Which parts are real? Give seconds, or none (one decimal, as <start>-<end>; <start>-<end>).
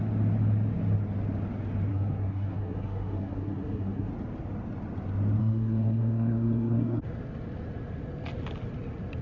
0.0-1.9; 4.1-5.4; 7.0-9.2